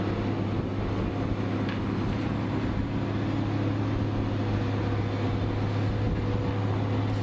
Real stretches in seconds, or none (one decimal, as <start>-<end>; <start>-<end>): 0.0-7.2

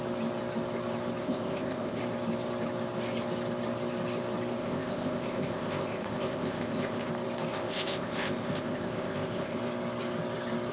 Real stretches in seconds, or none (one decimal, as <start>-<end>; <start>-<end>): 0.0-1.2; 2.0-4.6; 7.1-7.5; 9.6-10.7